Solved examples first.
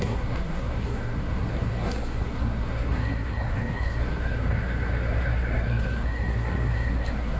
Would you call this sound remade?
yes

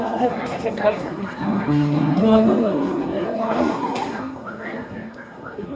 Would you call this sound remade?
yes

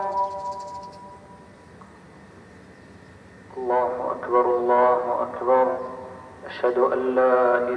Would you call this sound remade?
no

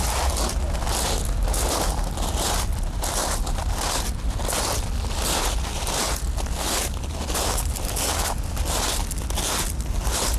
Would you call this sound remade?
no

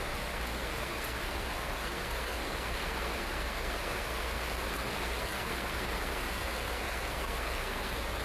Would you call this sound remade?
yes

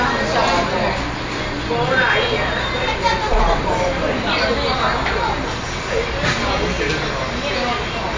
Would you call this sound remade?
no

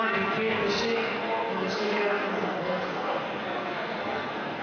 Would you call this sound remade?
yes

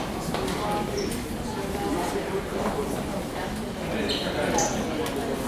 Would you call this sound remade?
no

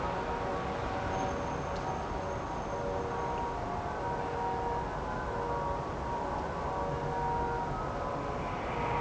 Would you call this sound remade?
no